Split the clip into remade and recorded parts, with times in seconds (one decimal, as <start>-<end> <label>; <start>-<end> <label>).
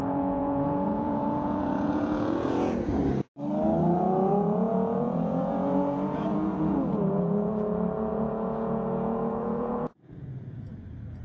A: 0.0-3.0 remade; 3.0-3.8 recorded; 3.8-7.5 remade; 7.5-8.1 recorded; 8.1-11.2 remade